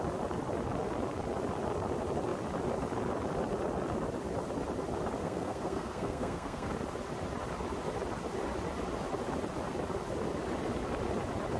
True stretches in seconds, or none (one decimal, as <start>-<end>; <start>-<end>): 0.0-5.2; 6.7-11.6